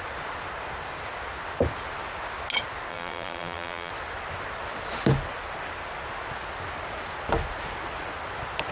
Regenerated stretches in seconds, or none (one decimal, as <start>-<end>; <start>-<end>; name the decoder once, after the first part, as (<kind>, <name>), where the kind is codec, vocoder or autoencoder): 2.9-3.9 (vocoder, BigVGAN v2)